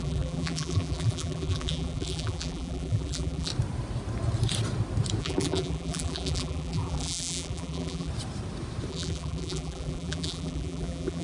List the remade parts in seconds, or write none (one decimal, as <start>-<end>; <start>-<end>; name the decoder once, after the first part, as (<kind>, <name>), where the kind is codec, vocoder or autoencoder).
0.0-3.5 (vocoder, BigVGAN v2); 5.2-8.1; 8.9-11.2